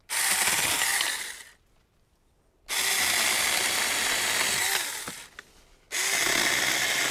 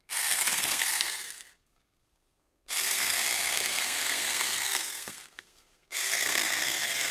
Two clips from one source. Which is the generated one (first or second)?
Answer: second